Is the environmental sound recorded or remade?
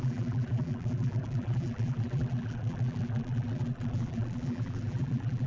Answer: remade